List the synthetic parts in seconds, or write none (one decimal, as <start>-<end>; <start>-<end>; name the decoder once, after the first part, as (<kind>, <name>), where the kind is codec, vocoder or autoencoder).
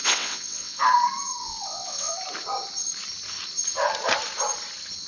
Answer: 0.0-0.8 (vocoder, WaveNeXt); 1.4-2.1